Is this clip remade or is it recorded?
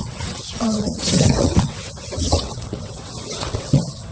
remade